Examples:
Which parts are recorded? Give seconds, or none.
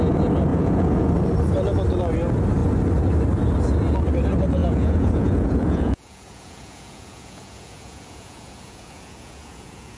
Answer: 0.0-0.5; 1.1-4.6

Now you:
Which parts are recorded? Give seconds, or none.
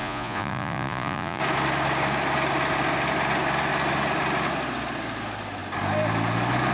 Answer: 1.4-6.7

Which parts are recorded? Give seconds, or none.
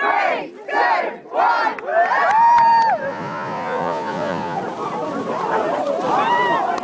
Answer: 0.0-3.1; 4.6-6.8